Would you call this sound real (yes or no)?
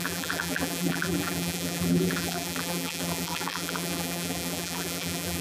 no